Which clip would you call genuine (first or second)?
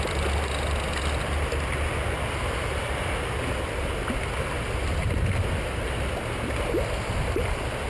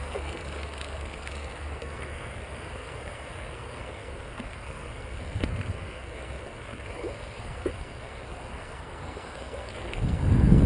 first